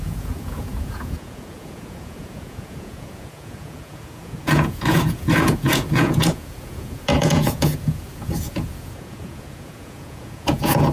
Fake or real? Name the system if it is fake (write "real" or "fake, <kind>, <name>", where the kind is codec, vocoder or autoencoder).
fake, vocoder, Vocos